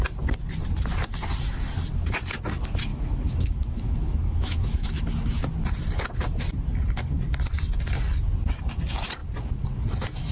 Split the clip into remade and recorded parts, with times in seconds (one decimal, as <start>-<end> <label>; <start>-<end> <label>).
0.0-2.9 recorded; 2.9-5.0 remade; 5.0-10.3 recorded